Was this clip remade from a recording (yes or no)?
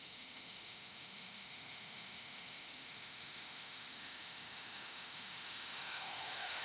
yes